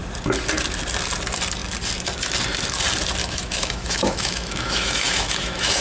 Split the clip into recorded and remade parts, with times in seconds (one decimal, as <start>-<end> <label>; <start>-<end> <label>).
0.0-3.2 recorded; 3.2-5.8 remade